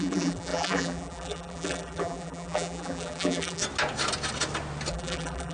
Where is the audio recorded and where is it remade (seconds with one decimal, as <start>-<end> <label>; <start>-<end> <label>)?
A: 0.0-3.6 remade; 3.6-4.9 recorded; 4.9-5.5 remade